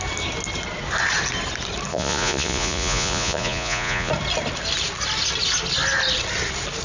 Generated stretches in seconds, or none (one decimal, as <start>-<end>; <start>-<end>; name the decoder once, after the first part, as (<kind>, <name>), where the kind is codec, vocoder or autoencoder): 1.9-4.1 (vocoder, Vocos)

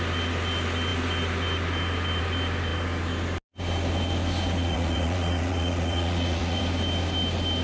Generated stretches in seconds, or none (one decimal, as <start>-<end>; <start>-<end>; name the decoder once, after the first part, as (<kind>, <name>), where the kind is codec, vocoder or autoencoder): 4.6-6.6 (vocoder, Vocos)